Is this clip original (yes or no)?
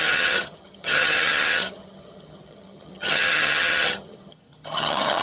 no